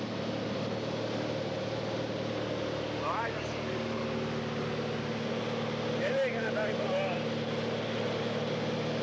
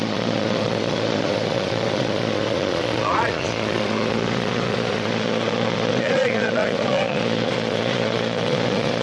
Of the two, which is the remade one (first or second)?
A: second